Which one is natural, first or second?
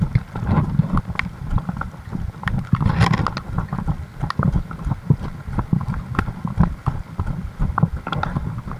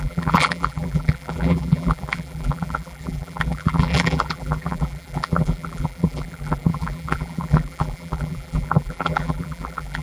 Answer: first